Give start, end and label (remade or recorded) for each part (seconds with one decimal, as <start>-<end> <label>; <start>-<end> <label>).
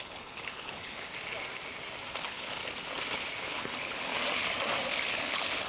0.0-1.1 remade; 1.1-2.2 recorded; 2.2-2.6 remade; 2.6-3.4 recorded; 3.4-4.1 remade; 4.1-5.1 recorded; 5.1-5.7 remade